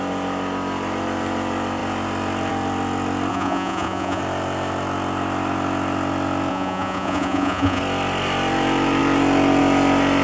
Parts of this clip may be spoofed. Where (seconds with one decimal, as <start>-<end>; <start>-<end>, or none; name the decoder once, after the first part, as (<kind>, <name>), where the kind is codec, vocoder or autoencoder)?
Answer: 3.3-4.2 (vocoder, Vocos); 6.5-7.8